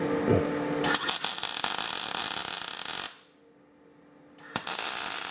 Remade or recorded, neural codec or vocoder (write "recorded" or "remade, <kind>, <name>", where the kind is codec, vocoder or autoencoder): recorded